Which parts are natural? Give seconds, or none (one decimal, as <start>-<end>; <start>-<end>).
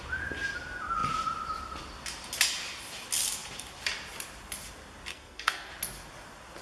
0.0-5.1; 5.7-6.6